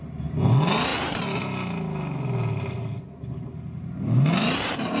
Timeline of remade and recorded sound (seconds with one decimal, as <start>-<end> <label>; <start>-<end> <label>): 0.0-5.0 recorded